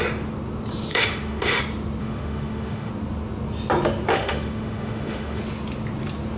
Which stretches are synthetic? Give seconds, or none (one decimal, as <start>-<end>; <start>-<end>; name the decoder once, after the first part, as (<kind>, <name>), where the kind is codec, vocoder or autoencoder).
0.9-1.6 (autoencoder, DAC-VAE); 2.0-2.9; 4.1-5.4

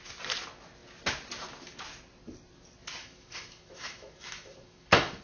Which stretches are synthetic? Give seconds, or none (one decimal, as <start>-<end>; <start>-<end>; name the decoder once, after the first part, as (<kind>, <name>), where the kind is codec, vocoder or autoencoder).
3.0-5.2 (autoencoder, DAC-VAE)

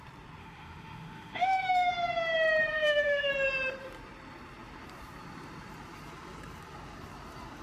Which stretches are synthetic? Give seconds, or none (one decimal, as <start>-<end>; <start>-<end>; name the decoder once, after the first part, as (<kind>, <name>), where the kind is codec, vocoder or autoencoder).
0.4-1.9 (autoencoder, DAC-VAE); 2.7-3.3

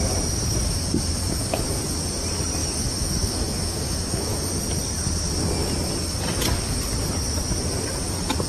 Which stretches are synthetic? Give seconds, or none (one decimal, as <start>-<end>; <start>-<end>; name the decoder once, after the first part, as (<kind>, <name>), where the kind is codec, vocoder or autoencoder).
2.6-4.5 (autoencoder, DAC-VAE)

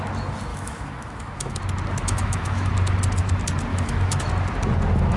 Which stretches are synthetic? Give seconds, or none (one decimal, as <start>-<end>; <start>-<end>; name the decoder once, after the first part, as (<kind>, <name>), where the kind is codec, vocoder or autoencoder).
0.5-1.6 (autoencoder, DAC-VAE); 2.0-2.7; 3.7-4.3

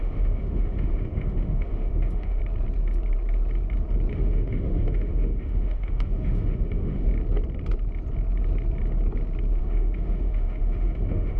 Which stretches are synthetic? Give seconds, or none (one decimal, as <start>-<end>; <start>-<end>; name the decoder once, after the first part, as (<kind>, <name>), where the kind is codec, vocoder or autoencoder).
0.0-2.4 (autoencoder, DAC-VAE); 4.1-7.1; 9.6-11.4